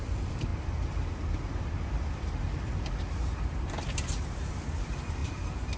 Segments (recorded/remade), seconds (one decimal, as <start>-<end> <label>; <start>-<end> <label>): 0.0-5.8 recorded